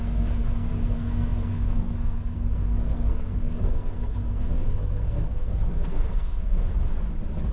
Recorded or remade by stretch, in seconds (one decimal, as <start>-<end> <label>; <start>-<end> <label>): 0.0-6.7 remade; 6.7-7.5 recorded